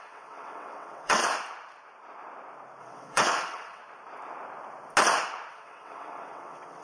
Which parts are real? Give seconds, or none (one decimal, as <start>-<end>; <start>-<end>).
1.2-2.8; 3.8-5.5